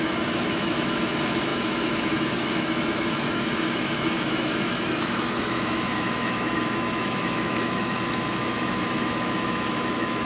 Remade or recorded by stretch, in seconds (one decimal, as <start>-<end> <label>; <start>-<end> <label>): 0.0-10.2 remade